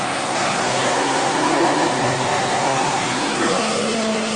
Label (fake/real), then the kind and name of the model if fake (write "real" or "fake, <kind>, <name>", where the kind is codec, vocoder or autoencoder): fake, codec, SNAC